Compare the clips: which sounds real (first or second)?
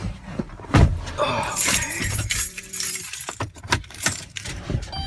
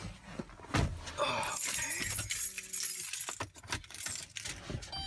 second